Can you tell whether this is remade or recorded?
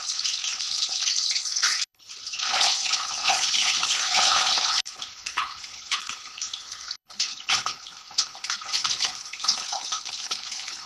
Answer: remade